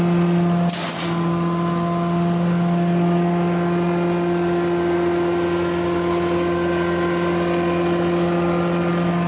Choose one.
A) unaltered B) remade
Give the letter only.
A